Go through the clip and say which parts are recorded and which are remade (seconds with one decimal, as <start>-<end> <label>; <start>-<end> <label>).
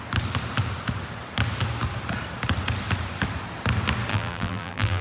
0.0-4.1 recorded; 4.1-5.0 remade